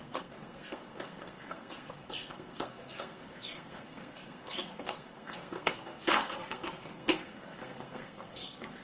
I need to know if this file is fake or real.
fake